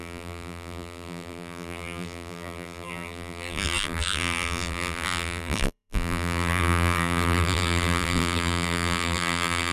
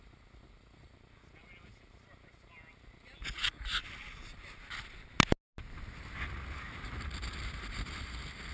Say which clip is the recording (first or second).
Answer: second